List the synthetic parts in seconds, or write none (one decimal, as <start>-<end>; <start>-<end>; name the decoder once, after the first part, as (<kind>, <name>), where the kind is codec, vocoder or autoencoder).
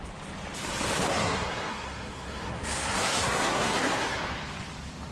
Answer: 1.1-4.2 (codec, SNAC)